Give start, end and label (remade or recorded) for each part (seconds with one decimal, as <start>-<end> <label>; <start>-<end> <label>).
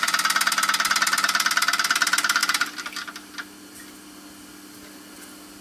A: 0.0-5.6 recorded